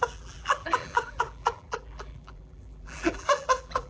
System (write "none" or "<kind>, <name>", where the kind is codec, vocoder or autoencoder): vocoder, BigVGAN v2